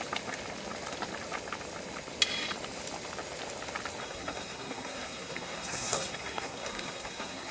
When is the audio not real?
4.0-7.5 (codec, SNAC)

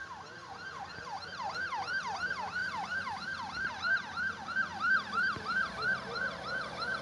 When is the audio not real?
2.6-3.7 (vocoder, BigVGAN v2)

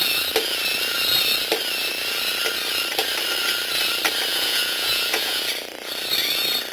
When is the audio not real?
4.3-5.4 (vocoder, Vocos)

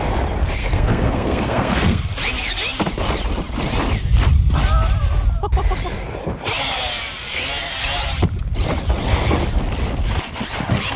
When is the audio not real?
0.6-2.0 (codec, SNAC)

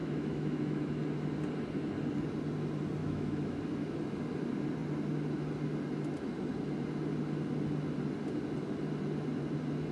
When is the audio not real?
0.0-1.0 (autoencoder, DAC-VAE); 3.0-3.6

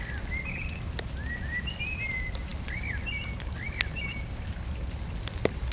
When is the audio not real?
none